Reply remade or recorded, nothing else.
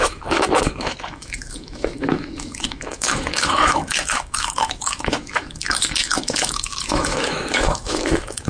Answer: remade